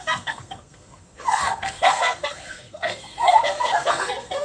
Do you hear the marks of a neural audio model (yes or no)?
yes